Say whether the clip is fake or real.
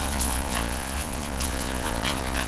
fake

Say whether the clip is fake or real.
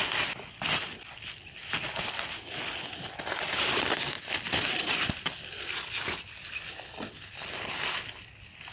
real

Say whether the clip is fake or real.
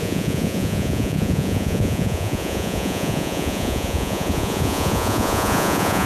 fake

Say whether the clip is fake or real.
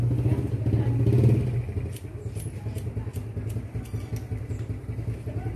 real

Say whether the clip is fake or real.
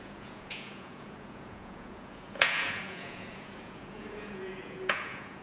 fake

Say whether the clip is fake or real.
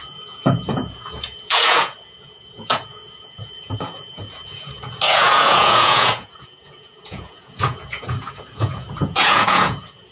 fake